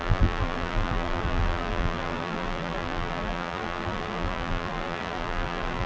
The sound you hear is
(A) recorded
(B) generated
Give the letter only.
B